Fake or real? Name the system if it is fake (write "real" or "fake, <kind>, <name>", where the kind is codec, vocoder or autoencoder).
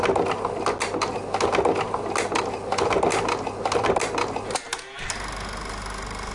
real